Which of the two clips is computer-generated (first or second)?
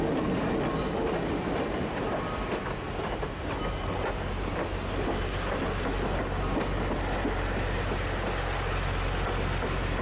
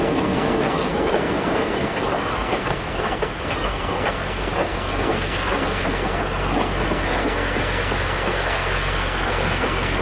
second